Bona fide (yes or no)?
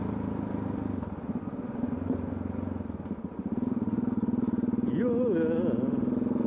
yes